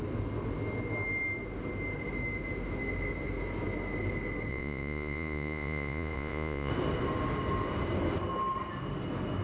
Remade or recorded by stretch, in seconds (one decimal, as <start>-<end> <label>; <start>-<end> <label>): 0.0-4.5 recorded; 4.5-6.7 remade; 6.7-9.4 recorded